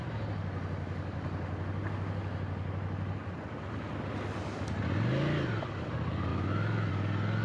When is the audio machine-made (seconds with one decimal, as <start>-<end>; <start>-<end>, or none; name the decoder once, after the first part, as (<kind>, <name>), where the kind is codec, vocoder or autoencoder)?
6.3-6.9 (autoencoder, DAC-VAE)